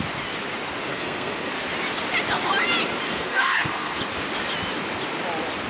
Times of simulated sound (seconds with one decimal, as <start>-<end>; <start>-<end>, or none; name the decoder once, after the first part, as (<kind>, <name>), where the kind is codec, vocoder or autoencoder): 0.9-1.5 (codec, SNAC); 3.1-4.0